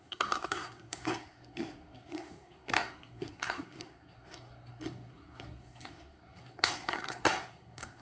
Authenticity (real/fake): fake